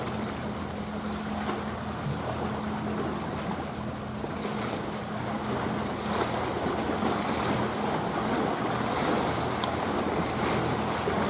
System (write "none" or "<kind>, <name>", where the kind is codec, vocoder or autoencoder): none